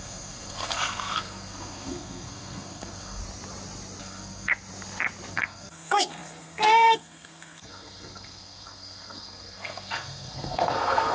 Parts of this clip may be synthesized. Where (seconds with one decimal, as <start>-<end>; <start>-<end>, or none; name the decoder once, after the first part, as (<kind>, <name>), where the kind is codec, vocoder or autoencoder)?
0.0-3.2 (codec, SNAC); 4.0-4.5; 5.3-11.1